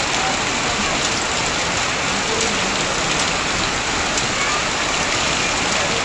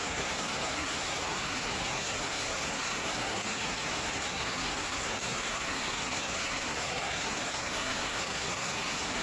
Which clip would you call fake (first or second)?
second